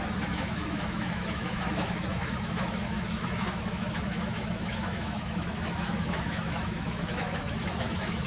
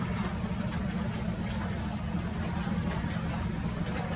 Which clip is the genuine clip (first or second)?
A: second